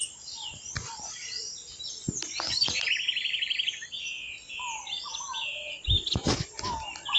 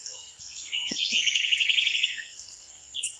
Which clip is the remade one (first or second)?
second